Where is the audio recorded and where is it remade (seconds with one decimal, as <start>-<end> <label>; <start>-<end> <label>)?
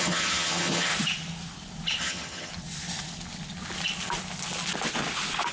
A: 0.0-0.9 remade; 0.9-2.0 recorded; 2.0-2.5 remade; 2.5-5.5 recorded